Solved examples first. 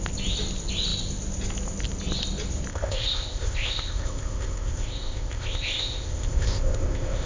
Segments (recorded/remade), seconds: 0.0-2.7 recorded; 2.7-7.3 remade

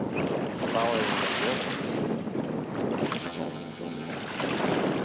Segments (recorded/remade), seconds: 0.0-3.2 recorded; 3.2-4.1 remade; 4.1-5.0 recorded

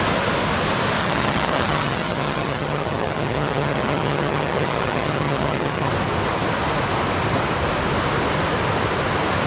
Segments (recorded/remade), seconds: 0.0-1.0 recorded; 1.0-5.9 remade; 5.9-9.5 recorded

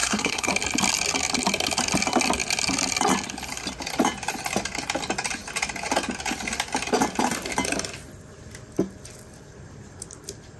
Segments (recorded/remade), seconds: 0.0-0.5 remade; 0.5-10.6 recorded

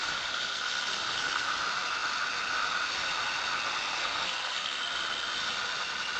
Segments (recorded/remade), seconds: 0.0-1.5 remade; 1.5-4.0 recorded; 4.0-4.8 remade; 4.8-6.2 recorded

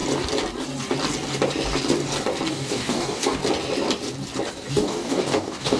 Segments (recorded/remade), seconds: 0.0-2.5 recorded; 2.5-3.4 remade; 3.4-4.7 recorded; 4.7-5.8 remade

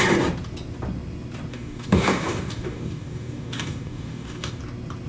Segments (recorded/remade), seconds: 0.0-1.5 recorded; 1.5-4.6 remade; 4.6-5.1 recorded